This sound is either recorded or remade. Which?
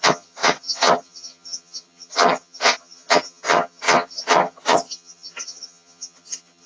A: remade